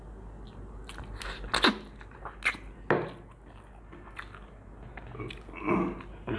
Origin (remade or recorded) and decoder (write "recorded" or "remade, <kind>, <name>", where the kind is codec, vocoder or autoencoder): recorded